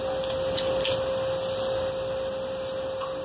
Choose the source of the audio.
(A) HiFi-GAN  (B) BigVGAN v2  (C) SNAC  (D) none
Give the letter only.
D